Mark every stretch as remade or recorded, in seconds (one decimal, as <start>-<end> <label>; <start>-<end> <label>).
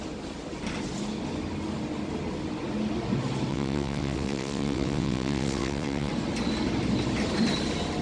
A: 0.0-3.5 recorded; 3.5-6.1 remade; 6.1-8.0 recorded